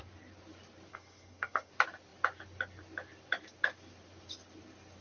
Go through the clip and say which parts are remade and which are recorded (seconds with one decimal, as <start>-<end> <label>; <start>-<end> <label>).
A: 0.0-0.9 recorded; 0.9-1.7 remade; 1.7-5.0 recorded